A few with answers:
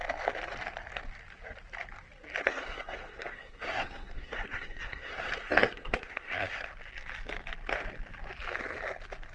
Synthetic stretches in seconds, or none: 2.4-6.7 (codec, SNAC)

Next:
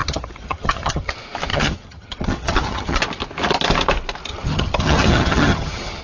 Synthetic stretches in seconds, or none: 0.0-1.1 (vocoder, HiFi-GAN); 1.5-3.0; 4.3-6.0

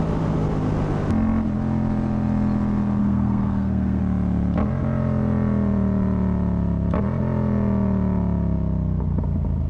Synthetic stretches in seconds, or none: 3.0-4.0 (codec, SNAC)

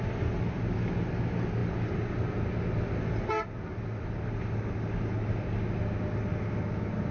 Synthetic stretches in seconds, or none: none